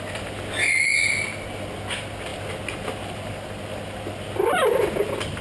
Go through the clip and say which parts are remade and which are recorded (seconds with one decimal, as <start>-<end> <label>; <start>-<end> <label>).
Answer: 0.0-5.4 recorded